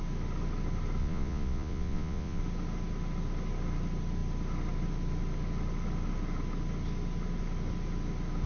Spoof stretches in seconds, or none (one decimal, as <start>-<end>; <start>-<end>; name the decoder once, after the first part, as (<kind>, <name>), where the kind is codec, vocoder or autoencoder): 1.0-2.4 (vocoder, Vocos)